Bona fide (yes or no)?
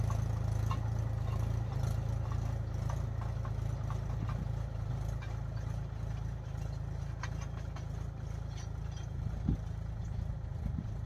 yes